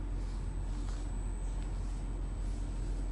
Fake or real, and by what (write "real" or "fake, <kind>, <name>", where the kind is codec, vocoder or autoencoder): real